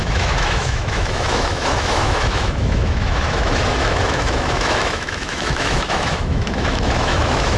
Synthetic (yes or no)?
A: yes